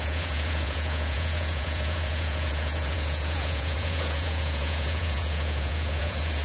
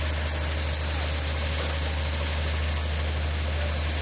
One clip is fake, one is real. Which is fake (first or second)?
first